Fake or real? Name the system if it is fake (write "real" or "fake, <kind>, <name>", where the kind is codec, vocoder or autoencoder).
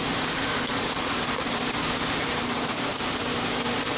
fake, vocoder, BigVGAN v2